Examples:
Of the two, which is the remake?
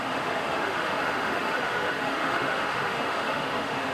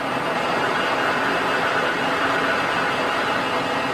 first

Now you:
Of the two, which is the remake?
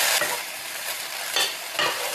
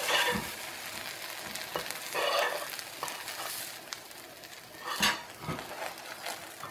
first